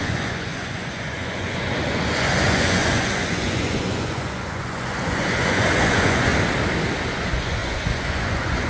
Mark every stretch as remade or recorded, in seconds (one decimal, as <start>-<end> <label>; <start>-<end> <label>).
0.0-6.3 remade; 6.3-7.1 recorded; 7.1-8.7 remade

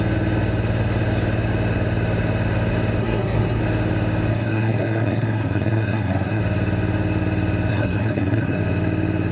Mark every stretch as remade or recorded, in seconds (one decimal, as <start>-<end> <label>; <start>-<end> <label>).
0.0-3.0 recorded; 3.0-3.6 remade; 3.6-4.3 recorded; 4.3-6.4 remade; 6.4-7.7 recorded; 7.7-8.6 remade; 8.6-9.3 recorded

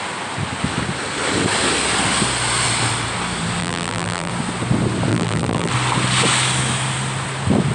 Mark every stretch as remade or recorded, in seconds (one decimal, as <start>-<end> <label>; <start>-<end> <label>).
0.0-3.6 recorded; 3.6-4.3 remade; 4.3-5.1 recorded; 5.1-5.7 remade; 5.7-7.7 recorded

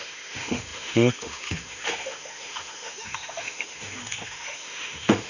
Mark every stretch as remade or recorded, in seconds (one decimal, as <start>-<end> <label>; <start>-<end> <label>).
0.0-5.3 remade

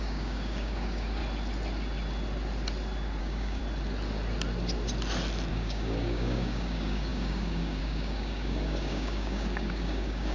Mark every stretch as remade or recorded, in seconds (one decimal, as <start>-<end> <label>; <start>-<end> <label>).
0.0-1.2 remade; 1.2-3.2 recorded; 3.2-3.6 remade; 3.6-5.5 recorded; 5.5-10.3 remade

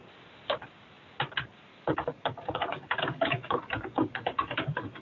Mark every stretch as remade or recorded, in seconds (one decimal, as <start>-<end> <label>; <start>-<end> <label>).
0.0-1.7 recorded; 1.7-5.0 remade